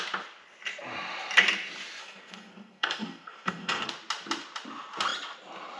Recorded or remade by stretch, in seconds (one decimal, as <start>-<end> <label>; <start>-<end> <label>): 0.0-2.0 recorded; 2.0-3.9 remade; 3.9-5.8 recorded